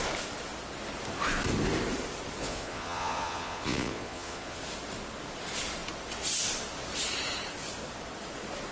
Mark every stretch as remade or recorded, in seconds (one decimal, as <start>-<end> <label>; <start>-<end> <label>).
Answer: 0.0-2.4 recorded; 2.4-4.6 remade; 4.6-8.7 recorded